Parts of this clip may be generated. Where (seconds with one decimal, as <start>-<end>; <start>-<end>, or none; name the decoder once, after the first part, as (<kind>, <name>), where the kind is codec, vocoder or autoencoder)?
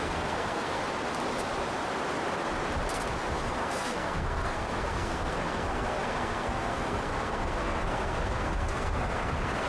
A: 0.0-0.8 (codec, SNAC); 2.9-9.7